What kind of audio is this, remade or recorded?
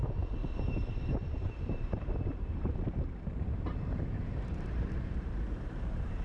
remade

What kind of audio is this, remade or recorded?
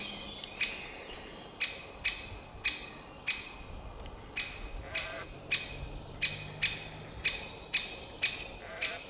recorded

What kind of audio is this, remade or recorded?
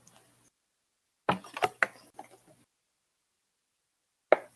recorded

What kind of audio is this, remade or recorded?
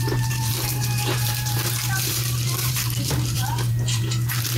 remade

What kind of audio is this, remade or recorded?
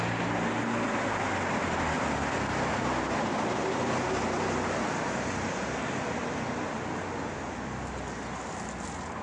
recorded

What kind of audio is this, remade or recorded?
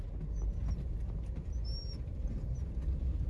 recorded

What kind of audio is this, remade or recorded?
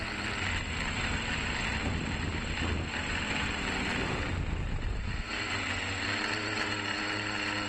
recorded